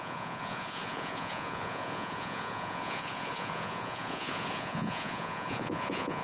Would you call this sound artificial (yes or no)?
yes